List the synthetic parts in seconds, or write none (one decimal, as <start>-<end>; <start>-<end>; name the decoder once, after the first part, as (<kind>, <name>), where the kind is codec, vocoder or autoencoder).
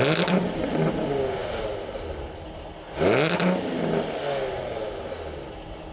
none